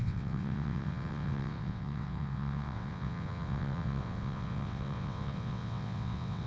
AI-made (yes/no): yes